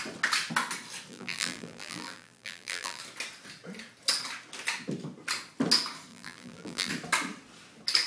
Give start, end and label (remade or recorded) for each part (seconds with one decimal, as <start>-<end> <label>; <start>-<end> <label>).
0.0-1.1 recorded; 1.1-3.0 remade; 3.0-6.1 recorded; 6.1-6.9 remade; 6.9-8.1 recorded